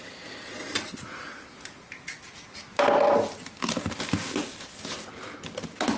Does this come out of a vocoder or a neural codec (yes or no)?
no